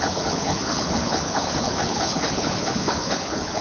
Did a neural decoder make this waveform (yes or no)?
yes